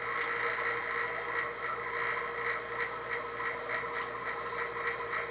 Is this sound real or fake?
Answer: real